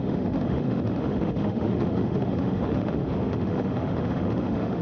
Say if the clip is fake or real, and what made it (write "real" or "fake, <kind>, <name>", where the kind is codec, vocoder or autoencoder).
fake, autoencoder, DAC-VAE